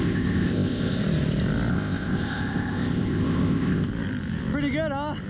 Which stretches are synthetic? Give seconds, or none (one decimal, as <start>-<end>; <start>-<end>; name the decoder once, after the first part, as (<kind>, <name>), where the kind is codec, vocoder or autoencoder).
0.0-1.0 (codec, ZipCodec); 1.7-3.9